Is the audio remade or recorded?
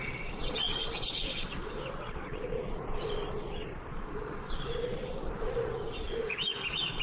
remade